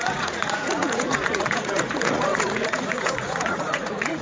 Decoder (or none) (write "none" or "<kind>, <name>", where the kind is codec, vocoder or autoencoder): vocoder, Vocos